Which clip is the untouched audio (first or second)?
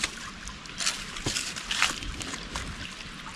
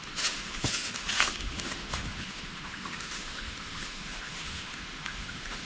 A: first